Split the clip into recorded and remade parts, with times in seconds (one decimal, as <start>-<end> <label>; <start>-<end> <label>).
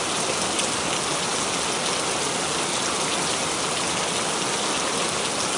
0.0-5.6 recorded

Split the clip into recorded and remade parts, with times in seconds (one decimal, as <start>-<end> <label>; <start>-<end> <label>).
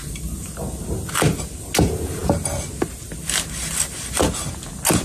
0.0-5.0 recorded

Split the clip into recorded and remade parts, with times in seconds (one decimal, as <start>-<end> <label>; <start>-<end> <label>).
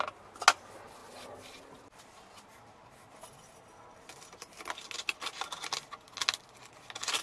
0.0-7.2 recorded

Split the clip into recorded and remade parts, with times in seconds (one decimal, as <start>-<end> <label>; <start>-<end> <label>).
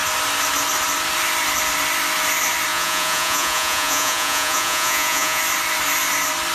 0.0-2.7 recorded; 2.7-5.4 remade; 5.4-6.5 recorded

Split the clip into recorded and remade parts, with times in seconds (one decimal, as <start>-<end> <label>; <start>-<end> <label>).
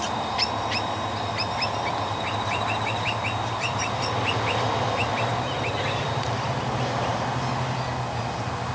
0.0-5.3 remade; 5.3-5.8 recorded; 5.8-7.1 remade; 7.1-8.7 recorded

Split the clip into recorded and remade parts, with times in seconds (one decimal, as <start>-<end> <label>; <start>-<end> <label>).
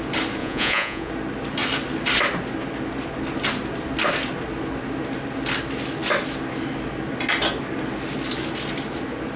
0.0-0.4 recorded; 0.4-1.1 remade; 1.1-9.4 recorded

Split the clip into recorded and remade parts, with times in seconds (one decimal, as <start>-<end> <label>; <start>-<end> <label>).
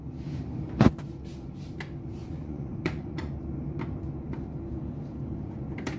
0.0-2.2 recorded; 2.2-3.3 remade; 3.3-6.0 recorded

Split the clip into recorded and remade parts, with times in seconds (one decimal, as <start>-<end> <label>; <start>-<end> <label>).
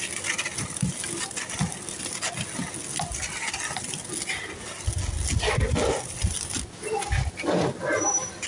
0.0-8.5 recorded